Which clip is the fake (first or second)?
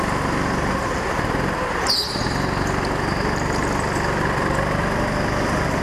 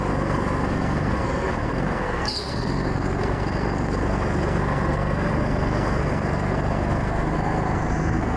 second